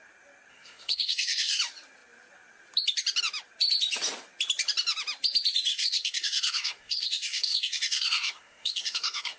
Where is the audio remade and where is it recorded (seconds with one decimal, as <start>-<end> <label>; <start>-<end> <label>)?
0.0-0.5 recorded; 0.5-1.6 remade; 1.6-5.7 recorded; 5.7-9.4 remade